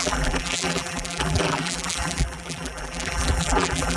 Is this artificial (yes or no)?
yes